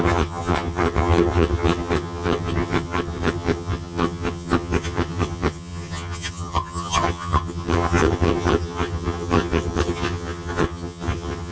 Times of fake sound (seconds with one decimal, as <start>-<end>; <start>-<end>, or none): 0.0-11.5